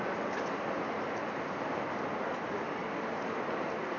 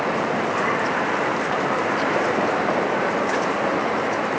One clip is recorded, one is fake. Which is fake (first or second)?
second